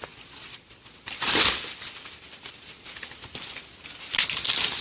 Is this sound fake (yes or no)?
no